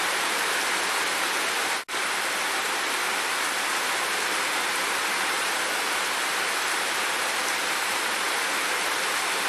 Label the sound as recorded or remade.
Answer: recorded